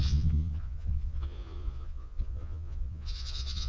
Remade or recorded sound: remade